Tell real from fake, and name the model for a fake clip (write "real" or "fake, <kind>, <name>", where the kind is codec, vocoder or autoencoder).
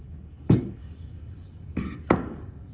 fake, codec, DAC